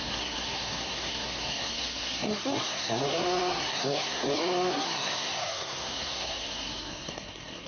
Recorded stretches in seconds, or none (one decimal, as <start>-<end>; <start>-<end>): none